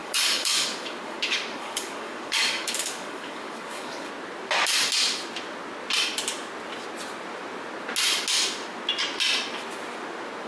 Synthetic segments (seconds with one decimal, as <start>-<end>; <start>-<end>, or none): 0.0-4.1